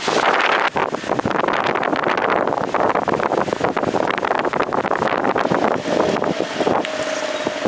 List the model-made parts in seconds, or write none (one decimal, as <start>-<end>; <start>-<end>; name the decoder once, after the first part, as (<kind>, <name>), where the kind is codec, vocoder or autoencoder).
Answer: none